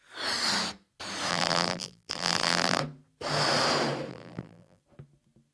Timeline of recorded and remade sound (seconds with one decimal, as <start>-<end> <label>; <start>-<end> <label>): 0.0-1.3 recorded; 1.3-2.8 remade; 2.8-4.1 recorded; 4.1-4.8 remade; 4.8-5.5 recorded